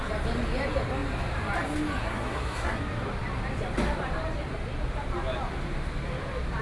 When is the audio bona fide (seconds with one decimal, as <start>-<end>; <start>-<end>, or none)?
0.0-2.0; 2.8-6.6